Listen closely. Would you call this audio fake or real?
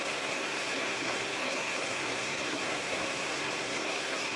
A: fake